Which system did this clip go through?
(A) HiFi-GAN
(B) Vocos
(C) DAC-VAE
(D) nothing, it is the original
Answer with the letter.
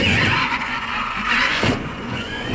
B